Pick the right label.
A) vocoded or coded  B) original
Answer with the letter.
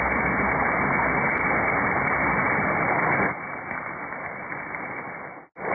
B